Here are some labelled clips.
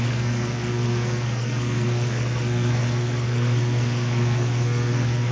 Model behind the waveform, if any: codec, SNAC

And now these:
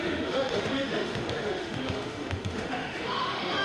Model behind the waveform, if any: autoencoder, DAC-VAE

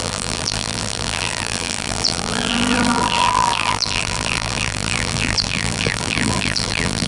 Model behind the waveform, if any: vocoder, BigVGAN v2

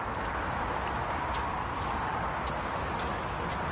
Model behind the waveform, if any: none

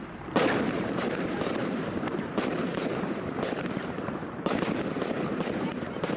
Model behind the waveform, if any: vocoder, BigVGAN v2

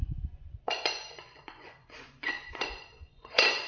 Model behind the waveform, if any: vocoder, Vocos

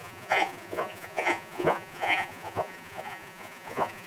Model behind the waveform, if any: vocoder, Vocos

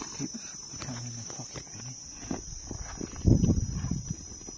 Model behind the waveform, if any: none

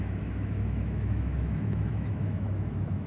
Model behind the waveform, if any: autoencoder, DAC-VAE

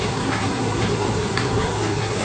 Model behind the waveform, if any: codec, SNAC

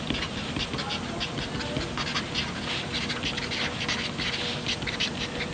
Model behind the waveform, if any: none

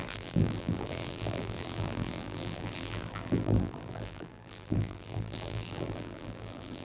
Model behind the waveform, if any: vocoder, BigVGAN v2